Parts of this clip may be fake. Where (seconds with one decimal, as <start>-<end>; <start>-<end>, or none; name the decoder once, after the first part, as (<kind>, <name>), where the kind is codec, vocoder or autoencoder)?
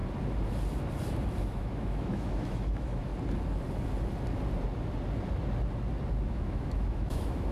1.4-3.1 (autoencoder, DAC-VAE); 6.2-7.5